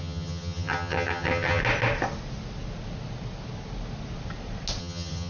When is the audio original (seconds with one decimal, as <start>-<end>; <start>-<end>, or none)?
1.6-4.8